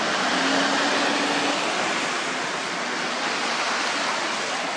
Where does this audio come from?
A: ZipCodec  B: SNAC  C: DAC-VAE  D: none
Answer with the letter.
D